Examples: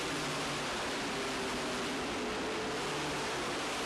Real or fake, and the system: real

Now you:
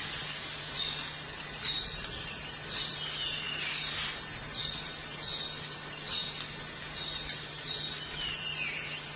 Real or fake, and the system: real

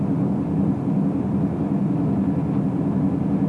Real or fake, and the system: real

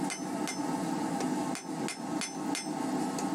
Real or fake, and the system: real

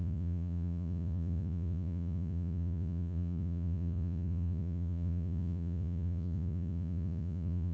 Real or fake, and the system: fake, vocoder, Vocos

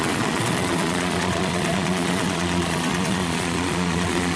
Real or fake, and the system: fake, vocoder, Vocos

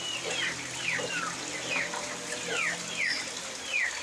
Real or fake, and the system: real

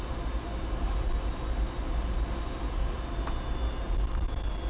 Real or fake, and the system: real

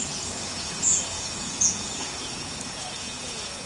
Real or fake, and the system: fake, vocoder, Vocos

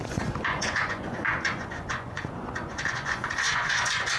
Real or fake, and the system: fake, vocoder, Vocos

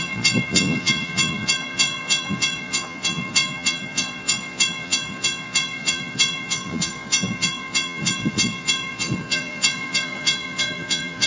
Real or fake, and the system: fake, vocoder, Vocos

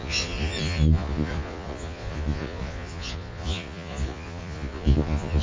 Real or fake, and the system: fake, vocoder, Vocos